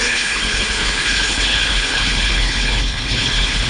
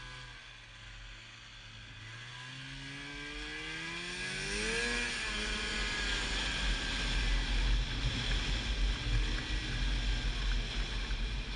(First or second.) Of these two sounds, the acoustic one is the second